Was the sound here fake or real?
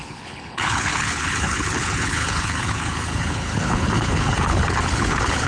fake